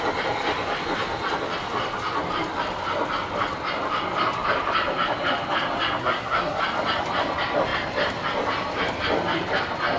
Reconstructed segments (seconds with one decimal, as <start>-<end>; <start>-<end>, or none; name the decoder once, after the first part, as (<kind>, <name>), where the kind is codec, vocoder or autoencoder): 6.0-6.6 (codec, SNAC)